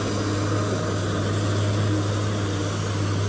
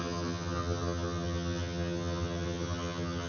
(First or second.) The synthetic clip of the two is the second